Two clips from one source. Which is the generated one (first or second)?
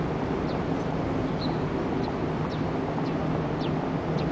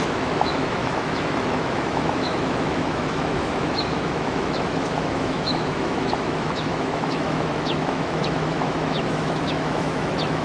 second